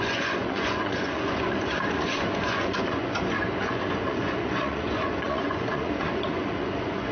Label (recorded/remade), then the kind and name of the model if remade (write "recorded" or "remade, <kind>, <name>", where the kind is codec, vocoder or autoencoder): remade, vocoder, Vocos